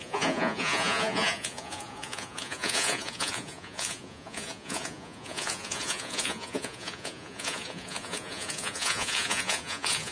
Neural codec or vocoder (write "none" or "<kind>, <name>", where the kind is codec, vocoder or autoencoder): vocoder, Vocos